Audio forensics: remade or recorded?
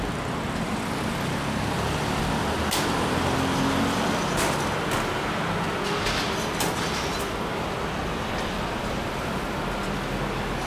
recorded